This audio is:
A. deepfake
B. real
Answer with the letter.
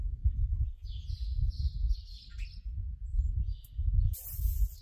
B